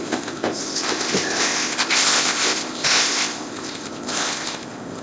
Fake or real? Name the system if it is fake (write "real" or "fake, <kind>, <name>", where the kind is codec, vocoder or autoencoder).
fake, codec, ZipCodec